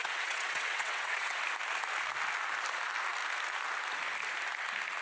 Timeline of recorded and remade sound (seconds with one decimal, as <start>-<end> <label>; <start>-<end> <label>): 0.0-1.4 remade; 1.4-5.0 recorded